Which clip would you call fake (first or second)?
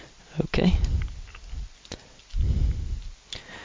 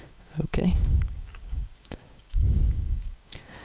second